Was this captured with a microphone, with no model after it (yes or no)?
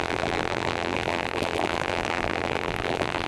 no